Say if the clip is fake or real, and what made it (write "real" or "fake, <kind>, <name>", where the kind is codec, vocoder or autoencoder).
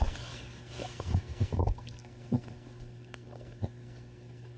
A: fake, codec, SNAC